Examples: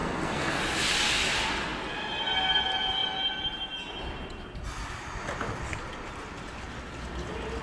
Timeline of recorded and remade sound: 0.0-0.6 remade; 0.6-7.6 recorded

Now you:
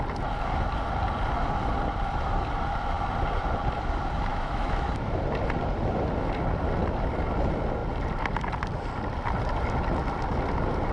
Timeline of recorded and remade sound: 0.0-4.3 recorded; 4.3-4.9 remade; 4.9-10.9 recorded

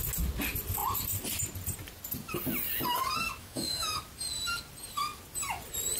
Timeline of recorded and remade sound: 0.0-3.4 recorded; 3.4-4.0 remade; 4.0-6.0 recorded

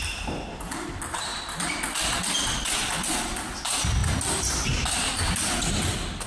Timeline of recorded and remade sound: 0.0-6.3 recorded

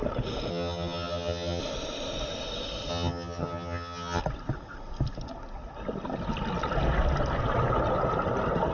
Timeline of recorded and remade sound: 0.0-0.5 recorded; 0.5-1.6 remade; 1.6-2.9 recorded; 2.9-4.2 remade; 4.2-8.7 recorded

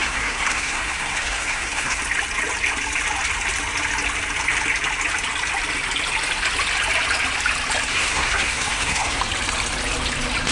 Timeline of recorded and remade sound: 0.0-2.0 remade; 2.0-7.9 recorded; 7.9-9.2 remade; 9.2-10.5 recorded

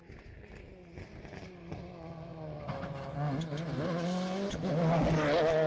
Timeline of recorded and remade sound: 0.0-5.7 recorded

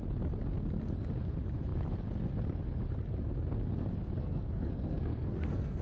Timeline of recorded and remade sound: 0.0-4.2 recorded; 4.2-5.8 remade